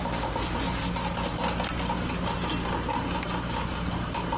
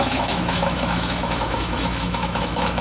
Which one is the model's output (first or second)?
second